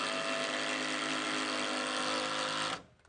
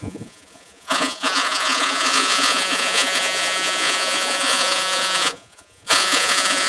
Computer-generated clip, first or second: second